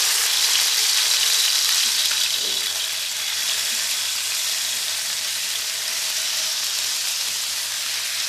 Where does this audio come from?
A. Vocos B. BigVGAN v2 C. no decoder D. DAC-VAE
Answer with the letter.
B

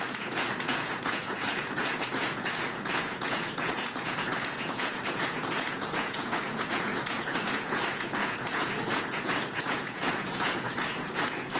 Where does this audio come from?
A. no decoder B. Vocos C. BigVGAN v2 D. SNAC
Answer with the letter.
B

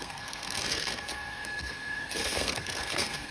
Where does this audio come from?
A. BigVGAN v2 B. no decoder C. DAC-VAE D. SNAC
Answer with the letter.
D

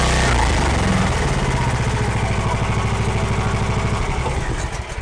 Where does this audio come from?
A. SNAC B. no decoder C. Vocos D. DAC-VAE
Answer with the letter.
B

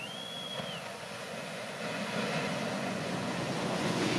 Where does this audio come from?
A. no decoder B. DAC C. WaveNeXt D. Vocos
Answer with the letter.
D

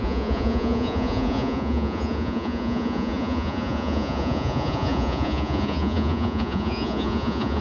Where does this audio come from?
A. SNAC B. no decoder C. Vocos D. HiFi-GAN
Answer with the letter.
C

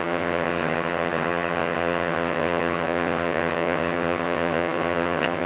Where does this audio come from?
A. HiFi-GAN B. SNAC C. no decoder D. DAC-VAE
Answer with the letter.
A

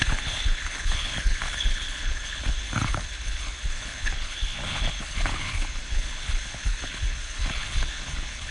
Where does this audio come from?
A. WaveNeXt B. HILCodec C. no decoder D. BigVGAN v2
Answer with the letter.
B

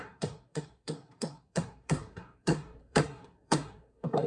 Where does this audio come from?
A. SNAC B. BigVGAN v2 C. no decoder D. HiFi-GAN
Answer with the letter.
A